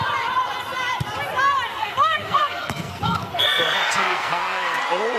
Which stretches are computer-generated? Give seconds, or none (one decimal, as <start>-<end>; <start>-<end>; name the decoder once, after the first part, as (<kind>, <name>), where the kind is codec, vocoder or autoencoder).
1.7-4.8 (codec, SNAC)